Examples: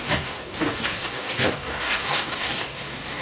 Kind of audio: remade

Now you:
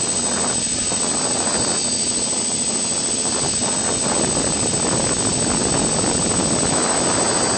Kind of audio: recorded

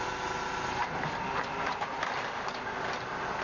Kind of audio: recorded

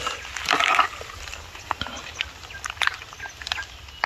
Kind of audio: recorded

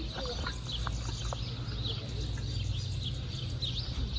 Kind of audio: recorded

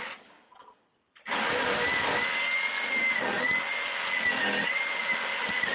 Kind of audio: recorded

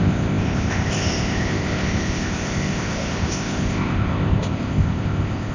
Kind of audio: remade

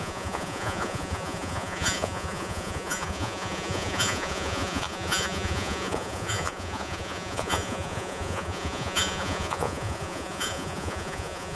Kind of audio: remade